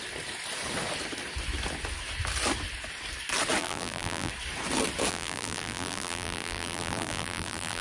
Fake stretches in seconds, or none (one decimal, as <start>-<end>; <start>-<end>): 3.6-4.3; 5.1-7.8